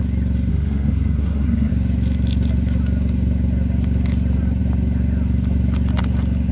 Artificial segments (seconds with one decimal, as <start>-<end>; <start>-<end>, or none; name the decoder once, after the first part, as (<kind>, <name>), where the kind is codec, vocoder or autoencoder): 0.5-1.7 (codec, SNAC)